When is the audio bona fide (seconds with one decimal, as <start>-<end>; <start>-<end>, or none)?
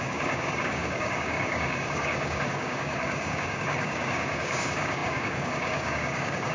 none